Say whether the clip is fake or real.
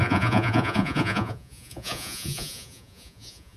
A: fake